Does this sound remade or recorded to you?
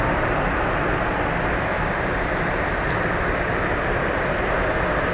recorded